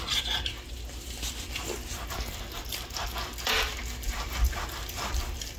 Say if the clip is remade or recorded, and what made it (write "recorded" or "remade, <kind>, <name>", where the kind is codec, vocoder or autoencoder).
recorded